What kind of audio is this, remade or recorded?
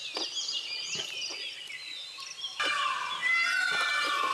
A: recorded